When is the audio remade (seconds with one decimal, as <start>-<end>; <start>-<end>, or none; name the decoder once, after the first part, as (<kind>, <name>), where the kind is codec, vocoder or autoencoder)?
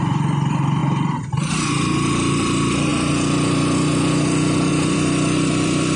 0.0-2.9 (vocoder, BigVGAN v2); 4.7-6.0